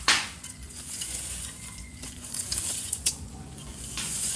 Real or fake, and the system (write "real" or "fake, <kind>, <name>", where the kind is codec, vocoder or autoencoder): fake, vocoder, Vocos